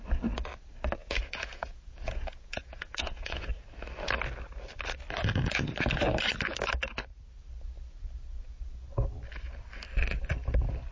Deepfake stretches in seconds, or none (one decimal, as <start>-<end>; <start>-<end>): 1.0-3.5